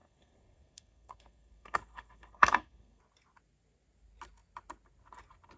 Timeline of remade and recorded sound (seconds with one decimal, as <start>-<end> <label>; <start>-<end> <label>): 0.0-3.0 remade; 3.0-5.6 recorded